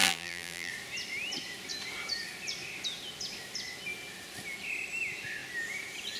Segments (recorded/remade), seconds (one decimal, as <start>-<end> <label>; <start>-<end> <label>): 0.0-0.7 remade; 0.7-6.2 recorded